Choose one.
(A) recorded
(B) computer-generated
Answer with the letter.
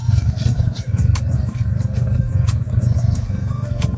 B